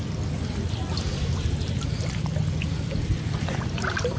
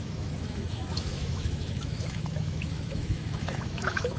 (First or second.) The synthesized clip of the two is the second